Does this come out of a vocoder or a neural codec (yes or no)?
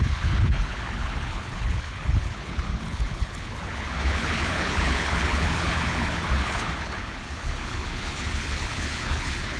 yes